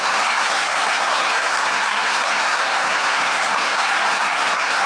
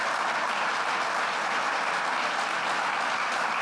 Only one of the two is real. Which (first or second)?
second